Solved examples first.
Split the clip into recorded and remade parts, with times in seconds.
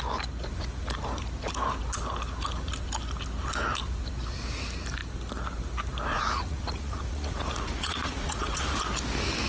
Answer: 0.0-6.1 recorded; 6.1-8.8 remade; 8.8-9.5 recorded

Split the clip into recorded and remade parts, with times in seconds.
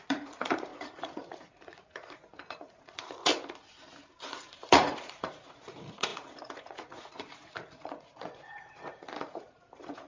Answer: 0.0-3.3 remade; 3.3-4.2 recorded; 4.2-10.1 remade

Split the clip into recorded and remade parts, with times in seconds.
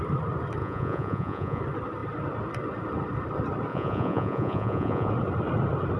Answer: 0.0-0.6 recorded; 0.6-1.6 remade; 1.6-3.7 recorded; 3.7-5.1 remade; 5.1-6.0 recorded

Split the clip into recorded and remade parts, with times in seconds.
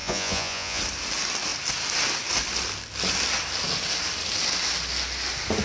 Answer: 0.0-0.8 remade; 0.8-5.6 recorded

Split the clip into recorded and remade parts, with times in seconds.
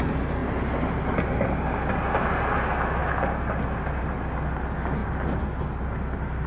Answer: 0.0-6.5 recorded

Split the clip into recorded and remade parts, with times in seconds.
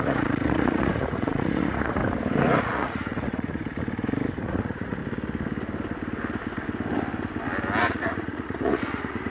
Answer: 0.0-2.0 remade; 2.0-2.6 recorded; 2.6-3.6 remade; 3.6-4.4 recorded; 4.4-5.0 remade; 5.0-7.8 recorded; 7.8-9.3 remade